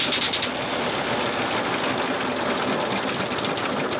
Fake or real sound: real